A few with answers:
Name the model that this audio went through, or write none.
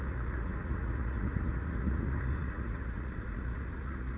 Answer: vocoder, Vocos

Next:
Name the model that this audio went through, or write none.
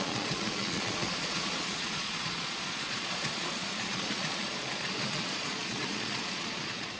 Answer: vocoder, Vocos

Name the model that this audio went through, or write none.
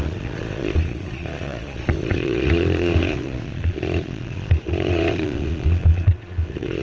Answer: vocoder, Vocos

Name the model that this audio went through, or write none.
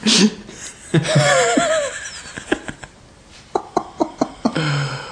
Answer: none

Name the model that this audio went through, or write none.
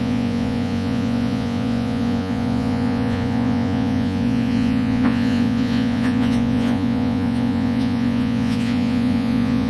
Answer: vocoder, Vocos